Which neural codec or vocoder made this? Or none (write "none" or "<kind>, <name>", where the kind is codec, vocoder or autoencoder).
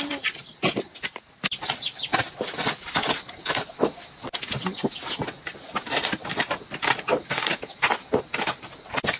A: none